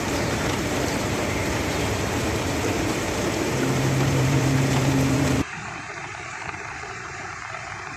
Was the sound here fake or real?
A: fake